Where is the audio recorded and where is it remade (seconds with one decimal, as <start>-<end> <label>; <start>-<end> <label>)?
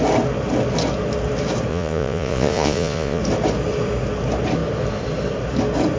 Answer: 0.0-1.7 recorded; 1.7-3.2 remade; 3.2-6.0 recorded